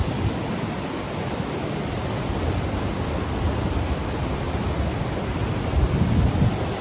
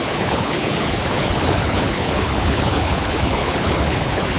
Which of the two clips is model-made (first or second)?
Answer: second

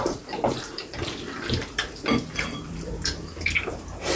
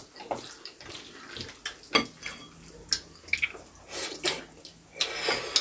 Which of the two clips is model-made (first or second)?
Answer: first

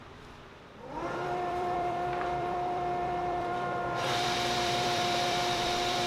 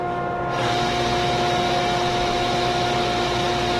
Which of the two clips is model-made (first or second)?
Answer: first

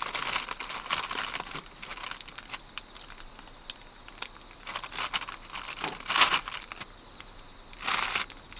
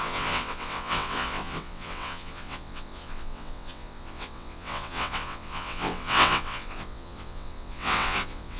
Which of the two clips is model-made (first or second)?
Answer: second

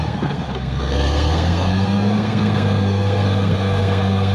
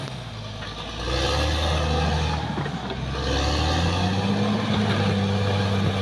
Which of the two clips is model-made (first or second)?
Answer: first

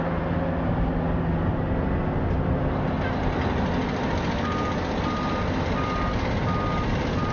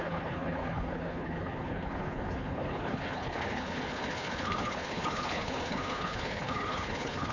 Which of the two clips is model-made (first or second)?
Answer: second